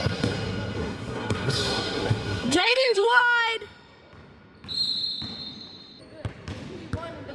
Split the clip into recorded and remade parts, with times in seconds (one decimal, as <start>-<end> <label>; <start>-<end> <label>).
0.0-3.2 remade; 3.2-7.3 recorded